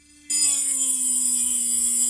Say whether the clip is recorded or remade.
recorded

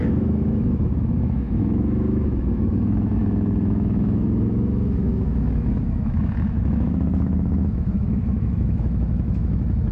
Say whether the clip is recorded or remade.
remade